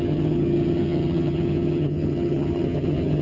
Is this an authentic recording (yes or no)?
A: no